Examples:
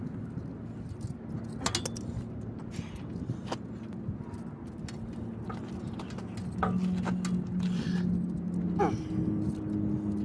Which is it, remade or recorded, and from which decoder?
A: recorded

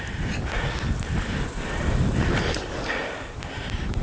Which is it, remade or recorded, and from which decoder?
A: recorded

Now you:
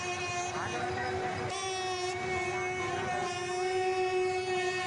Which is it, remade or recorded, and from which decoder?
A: recorded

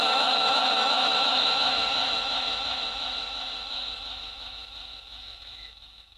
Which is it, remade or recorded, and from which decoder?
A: remade, autoencoder, DAC-VAE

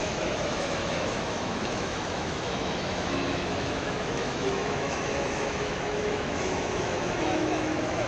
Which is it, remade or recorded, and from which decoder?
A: remade, autoencoder, DAC-VAE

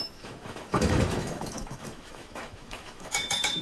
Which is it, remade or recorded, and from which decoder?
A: remade, autoencoder, DAC-VAE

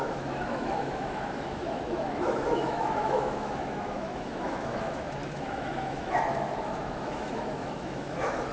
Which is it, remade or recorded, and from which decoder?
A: remade, autoencoder, DAC-VAE